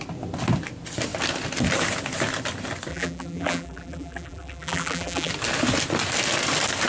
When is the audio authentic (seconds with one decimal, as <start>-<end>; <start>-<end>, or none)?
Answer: 0.0-2.9; 5.3-6.9